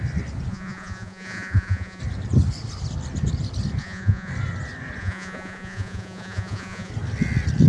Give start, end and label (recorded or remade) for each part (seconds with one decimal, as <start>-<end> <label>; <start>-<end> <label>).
0.0-0.5 recorded; 0.5-2.0 remade; 2.0-3.8 recorded; 3.8-4.3 remade; 4.3-5.0 recorded; 5.0-6.9 remade; 6.9-7.7 recorded